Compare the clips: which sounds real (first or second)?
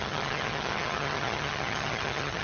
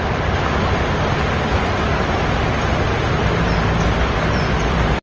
second